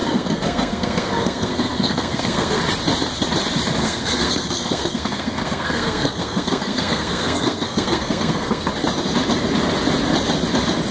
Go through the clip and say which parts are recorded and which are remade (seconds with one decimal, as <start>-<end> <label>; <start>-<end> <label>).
0.0-2.6 remade; 2.6-3.8 recorded; 3.8-8.6 remade; 8.6-10.9 recorded